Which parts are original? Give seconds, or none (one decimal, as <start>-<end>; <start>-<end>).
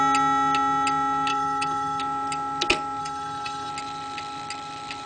0.0-1.3; 2.0-3.0; 3.7-5.1